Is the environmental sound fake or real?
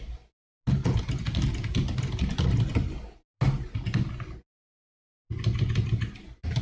real